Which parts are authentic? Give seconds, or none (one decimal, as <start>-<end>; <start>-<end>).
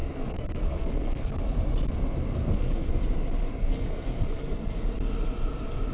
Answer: 1.4-2.3; 2.9-3.5; 4.7-5.9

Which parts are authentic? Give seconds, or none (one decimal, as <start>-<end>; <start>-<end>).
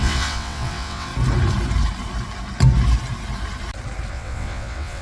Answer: 1.1-4.1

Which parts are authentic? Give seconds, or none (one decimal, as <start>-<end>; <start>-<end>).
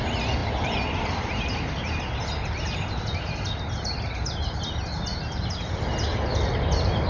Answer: 0.0-7.1